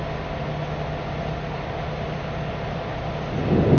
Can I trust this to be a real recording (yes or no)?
yes